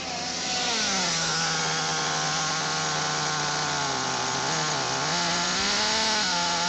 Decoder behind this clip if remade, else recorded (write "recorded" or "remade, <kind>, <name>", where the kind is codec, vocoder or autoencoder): recorded